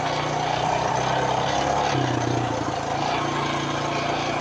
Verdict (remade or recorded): recorded